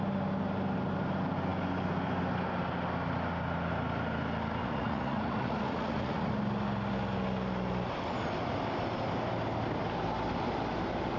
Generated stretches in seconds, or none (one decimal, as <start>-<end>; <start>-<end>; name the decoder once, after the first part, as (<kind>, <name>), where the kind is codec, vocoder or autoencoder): 4.6-6.3 (vocoder, Vocos)

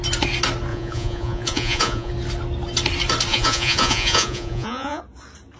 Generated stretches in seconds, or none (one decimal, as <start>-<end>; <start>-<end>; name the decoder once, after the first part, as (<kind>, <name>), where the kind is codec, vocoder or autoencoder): 0.7-2.1 (vocoder, Vocos); 3.3-5.0

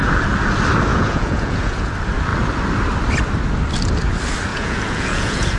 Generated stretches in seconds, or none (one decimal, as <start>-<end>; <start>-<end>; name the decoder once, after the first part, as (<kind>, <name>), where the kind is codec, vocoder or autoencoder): 0.9-1.9 (vocoder, Vocos); 4.5-5.6

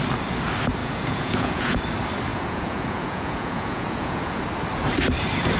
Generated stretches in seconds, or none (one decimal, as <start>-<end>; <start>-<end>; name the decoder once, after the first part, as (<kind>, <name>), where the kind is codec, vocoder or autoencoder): 0.8-1.8 (vocoder, Vocos); 2.3-4.4

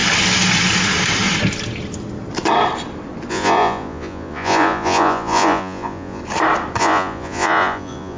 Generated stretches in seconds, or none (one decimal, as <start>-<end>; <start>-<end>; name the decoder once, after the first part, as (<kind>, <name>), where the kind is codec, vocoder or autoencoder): 3.3-6.2 (vocoder, Vocos); 6.8-8.2

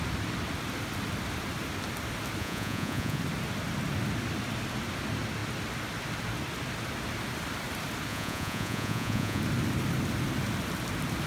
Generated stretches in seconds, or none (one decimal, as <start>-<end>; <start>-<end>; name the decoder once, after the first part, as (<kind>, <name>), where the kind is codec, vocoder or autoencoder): 2.4-3.2 (vocoder, Vocos); 8.1-9.4